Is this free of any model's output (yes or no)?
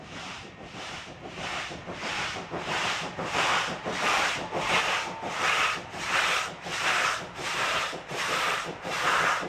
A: no